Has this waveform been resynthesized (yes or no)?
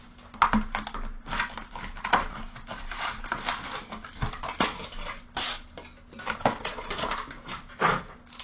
no